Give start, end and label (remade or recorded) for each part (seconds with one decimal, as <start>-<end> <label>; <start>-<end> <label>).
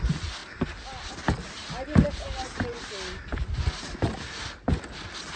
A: 0.0-5.4 recorded